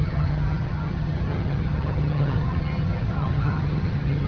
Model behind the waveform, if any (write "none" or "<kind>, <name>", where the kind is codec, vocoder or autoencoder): vocoder, HiFi-GAN